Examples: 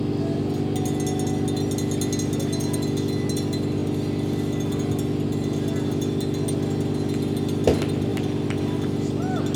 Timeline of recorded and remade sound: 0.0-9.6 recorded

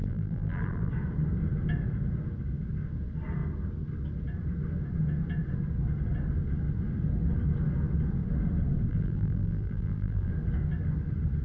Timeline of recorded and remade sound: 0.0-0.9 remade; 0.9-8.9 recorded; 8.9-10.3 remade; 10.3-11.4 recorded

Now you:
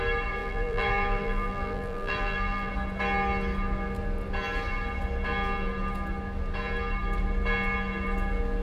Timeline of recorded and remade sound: 0.0-0.4 recorded; 0.4-2.7 remade; 2.7-8.6 recorded

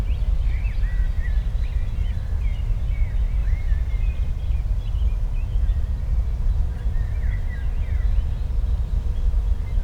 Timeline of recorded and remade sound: 0.0-3.4 recorded; 3.4-4.3 remade; 4.3-9.8 recorded

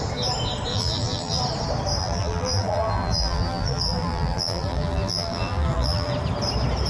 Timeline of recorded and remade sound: 0.0-0.7 recorded; 0.7-1.4 remade; 1.4-2.0 recorded; 2.0-6.1 remade; 6.1-6.9 recorded

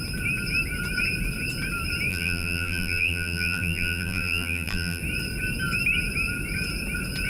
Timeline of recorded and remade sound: 0.0-2.1 recorded; 2.1-5.0 remade; 5.0-7.3 recorded